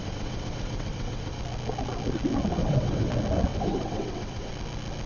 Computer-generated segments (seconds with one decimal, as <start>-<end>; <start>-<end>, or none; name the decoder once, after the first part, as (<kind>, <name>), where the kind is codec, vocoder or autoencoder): 0.0-1.4 (vocoder, WaveNeXt); 2.6-3.1; 3.5-4.5